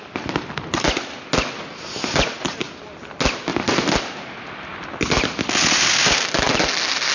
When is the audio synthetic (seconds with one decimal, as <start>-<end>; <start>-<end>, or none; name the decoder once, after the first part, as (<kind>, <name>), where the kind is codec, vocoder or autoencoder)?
none